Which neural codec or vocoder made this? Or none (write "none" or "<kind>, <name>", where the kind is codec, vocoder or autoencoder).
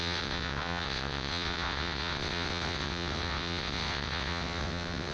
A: vocoder, WaveNeXt